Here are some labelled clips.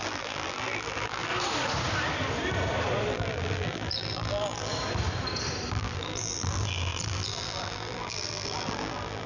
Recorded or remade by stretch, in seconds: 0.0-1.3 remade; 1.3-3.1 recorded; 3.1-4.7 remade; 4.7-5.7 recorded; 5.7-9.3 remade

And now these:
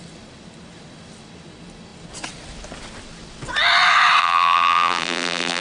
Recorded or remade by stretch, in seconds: 0.0-4.2 recorded; 4.2-5.6 remade

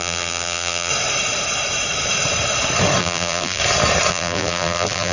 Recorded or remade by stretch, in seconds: 0.0-0.9 remade; 0.9-3.0 recorded; 3.0-3.6 remade; 3.6-4.1 recorded; 4.1-5.1 remade

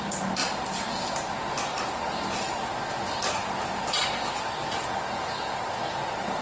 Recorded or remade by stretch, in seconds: 0.0-0.4 recorded; 0.4-1.3 remade; 1.3-6.4 recorded

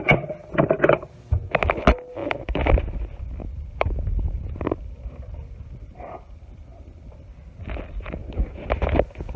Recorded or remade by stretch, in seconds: 0.0-2.2 recorded; 2.2-6.4 remade; 6.4-9.4 recorded

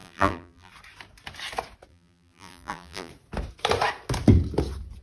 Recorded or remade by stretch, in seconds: 0.0-0.7 remade; 0.7-1.9 recorded; 1.9-3.1 remade; 3.1-5.0 recorded

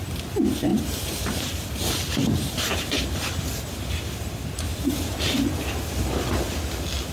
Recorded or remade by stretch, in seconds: 0.0-0.7 recorded; 0.7-1.7 remade; 1.7-2.2 recorded; 2.2-3.0 remade; 3.0-4.7 recorded; 4.7-6.0 remade; 6.0-7.1 recorded

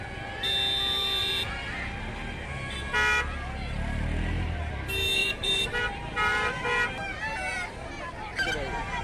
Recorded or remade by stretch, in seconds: 0.0-5.2 recorded; 5.2-6.9 remade; 6.9-9.0 recorded